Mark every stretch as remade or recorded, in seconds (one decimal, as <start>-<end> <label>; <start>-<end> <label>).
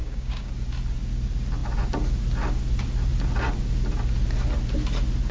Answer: 0.0-0.5 remade; 0.5-5.3 recorded